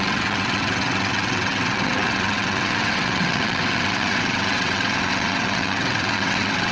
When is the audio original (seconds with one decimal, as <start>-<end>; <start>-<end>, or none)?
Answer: none